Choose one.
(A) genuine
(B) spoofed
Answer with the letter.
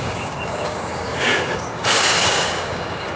B